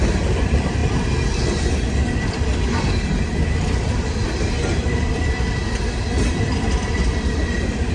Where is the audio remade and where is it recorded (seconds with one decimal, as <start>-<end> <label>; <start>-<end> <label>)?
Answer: 0.0-0.8 remade; 0.8-1.7 recorded; 1.7-5.6 remade; 5.6-6.3 recorded; 6.3-7.9 remade